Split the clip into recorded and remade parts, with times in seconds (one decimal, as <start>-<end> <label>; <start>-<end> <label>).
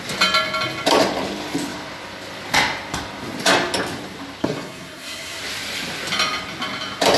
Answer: 0.0-4.4 recorded; 4.4-5.4 remade; 5.4-7.2 recorded